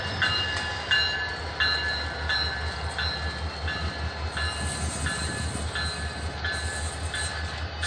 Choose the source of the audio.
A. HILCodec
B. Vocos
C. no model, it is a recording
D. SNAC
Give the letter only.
C